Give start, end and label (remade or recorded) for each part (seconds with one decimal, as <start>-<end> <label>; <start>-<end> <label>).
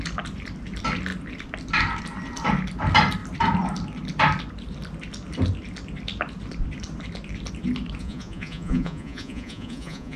0.0-8.0 recorded; 8.0-10.2 remade